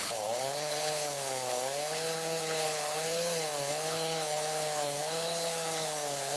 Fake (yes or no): yes